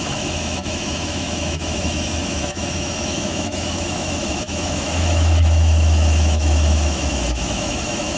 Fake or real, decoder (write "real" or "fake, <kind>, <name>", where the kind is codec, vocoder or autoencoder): fake, autoencoder, DAC-VAE